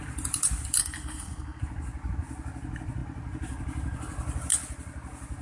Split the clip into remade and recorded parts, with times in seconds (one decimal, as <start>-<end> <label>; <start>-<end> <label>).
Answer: 0.0-0.8 recorded; 0.8-1.6 remade; 1.6-5.4 recorded